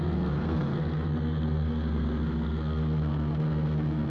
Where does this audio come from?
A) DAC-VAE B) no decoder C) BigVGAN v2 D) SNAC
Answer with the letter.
D